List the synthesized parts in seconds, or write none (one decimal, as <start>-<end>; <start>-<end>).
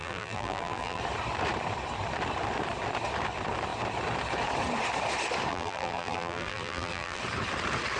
0.0-1.0; 5.5-7.2